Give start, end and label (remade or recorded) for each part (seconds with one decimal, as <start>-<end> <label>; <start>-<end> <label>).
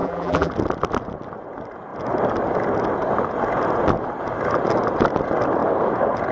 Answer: 0.0-0.5 remade; 0.5-6.3 recorded